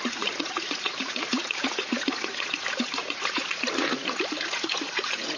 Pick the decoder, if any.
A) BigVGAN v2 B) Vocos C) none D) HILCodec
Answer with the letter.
B